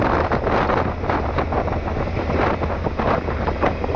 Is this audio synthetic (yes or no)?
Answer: no